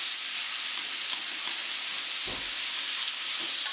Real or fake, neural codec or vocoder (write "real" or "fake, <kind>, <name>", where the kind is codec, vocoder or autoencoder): real